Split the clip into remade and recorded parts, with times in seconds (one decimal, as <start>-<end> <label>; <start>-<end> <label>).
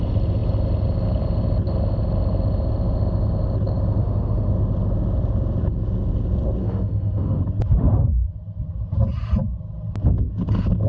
0.0-4.0 recorded; 4.0-4.5 remade; 4.5-6.6 recorded; 6.6-7.4 remade; 7.4-10.9 recorded